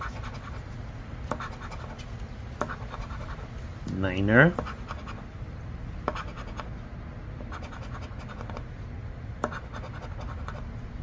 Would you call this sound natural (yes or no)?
yes